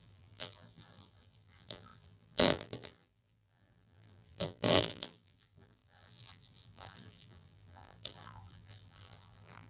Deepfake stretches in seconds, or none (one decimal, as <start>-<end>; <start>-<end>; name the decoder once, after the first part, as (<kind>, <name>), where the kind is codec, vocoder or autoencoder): 0.0-9.7 (vocoder, BigVGAN v2)